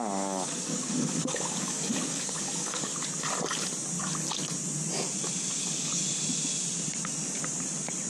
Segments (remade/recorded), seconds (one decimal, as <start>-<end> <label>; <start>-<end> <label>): 0.0-2.9 remade; 2.9-5.6 recorded; 5.6-6.0 remade; 6.0-8.1 recorded